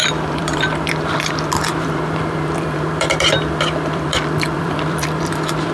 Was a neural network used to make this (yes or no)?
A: yes